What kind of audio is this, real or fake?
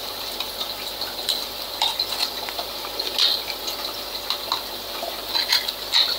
real